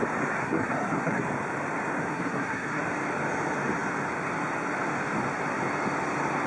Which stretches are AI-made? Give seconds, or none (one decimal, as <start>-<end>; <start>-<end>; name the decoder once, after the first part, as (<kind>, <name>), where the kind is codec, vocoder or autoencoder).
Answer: 0.4-1.2 (codec, SNAC); 2.1-2.8